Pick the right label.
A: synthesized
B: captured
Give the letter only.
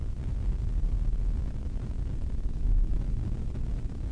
B